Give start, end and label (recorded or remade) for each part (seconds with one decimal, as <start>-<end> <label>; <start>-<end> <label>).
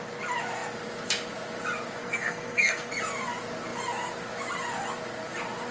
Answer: 0.0-2.0 recorded; 2.0-2.9 remade; 2.9-5.7 recorded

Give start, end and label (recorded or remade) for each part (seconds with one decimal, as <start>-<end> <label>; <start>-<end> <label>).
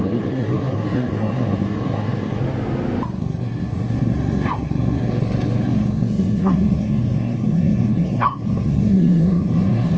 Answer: 0.0-2.4 remade; 2.4-3.2 recorded; 3.2-10.0 remade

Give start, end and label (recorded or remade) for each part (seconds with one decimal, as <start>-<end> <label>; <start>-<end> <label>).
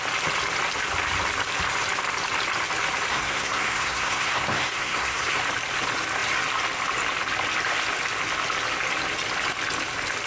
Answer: 0.0-3.1 recorded; 3.1-5.4 remade; 5.4-10.3 recorded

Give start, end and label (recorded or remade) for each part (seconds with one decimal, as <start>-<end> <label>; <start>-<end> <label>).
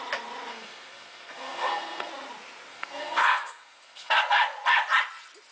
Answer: 0.0-0.5 recorded; 0.5-2.1 remade; 2.1-2.7 recorded; 2.7-4.2 remade; 4.2-5.5 recorded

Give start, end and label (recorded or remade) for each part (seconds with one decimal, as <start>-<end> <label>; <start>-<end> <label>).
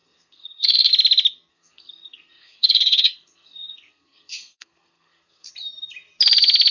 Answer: 0.0-0.9 remade; 0.9-1.5 recorded; 1.5-5.5 remade; 5.5-6.7 recorded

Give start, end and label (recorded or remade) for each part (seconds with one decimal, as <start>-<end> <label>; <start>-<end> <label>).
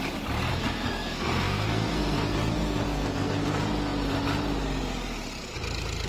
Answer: 0.0-0.5 recorded; 0.5-3.5 remade; 3.5-6.1 recorded